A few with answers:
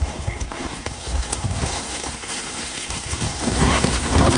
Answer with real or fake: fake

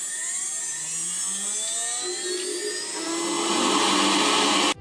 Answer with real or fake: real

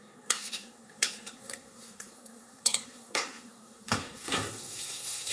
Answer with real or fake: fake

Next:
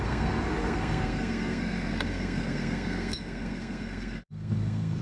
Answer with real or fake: fake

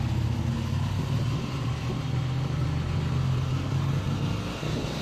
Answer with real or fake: real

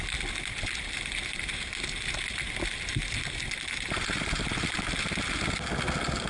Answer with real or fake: real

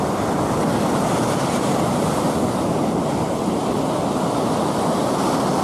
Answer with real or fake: real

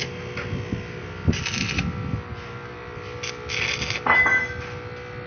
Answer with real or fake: real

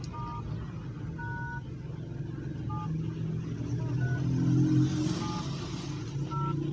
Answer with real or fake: real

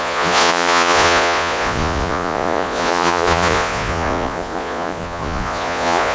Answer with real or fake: fake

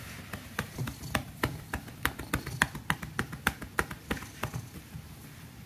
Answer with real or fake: real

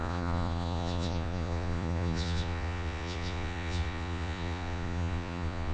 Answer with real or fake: fake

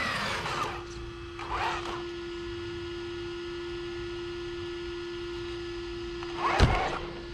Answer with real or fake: real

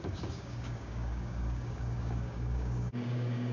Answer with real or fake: fake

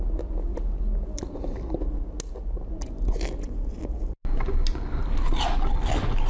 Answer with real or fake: real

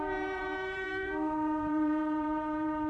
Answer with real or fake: fake